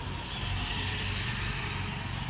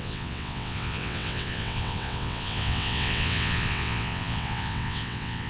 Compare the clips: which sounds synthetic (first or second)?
second